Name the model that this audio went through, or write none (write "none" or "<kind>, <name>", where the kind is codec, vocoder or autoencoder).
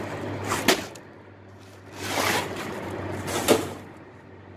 none